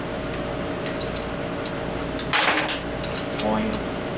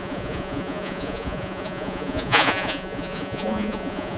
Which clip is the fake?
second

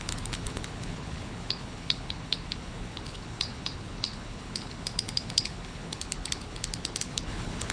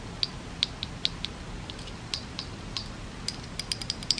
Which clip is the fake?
first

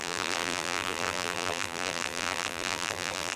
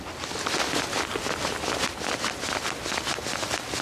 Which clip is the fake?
first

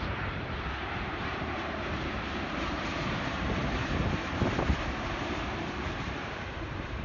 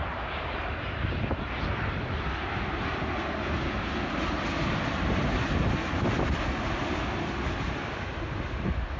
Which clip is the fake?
first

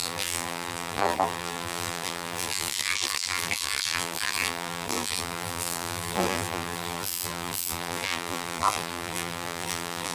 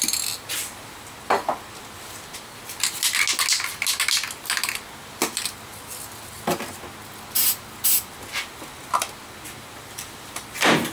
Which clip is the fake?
first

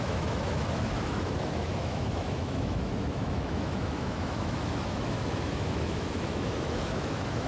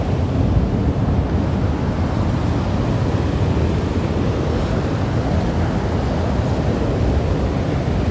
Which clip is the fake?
first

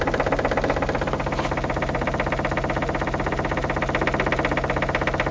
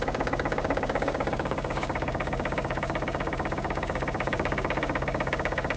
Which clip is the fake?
second